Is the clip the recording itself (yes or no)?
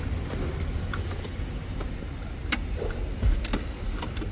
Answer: yes